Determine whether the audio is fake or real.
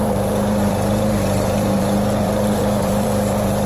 fake